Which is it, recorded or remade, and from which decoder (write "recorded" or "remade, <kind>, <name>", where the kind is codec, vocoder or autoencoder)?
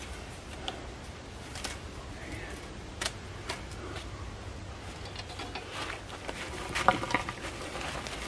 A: recorded